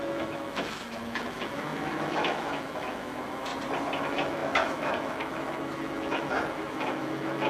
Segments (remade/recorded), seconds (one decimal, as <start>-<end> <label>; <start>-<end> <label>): 0.0-3.5 remade; 3.5-4.0 recorded; 4.0-7.5 remade